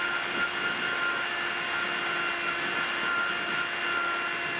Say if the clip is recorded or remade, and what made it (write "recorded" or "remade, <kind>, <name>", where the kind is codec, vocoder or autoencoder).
recorded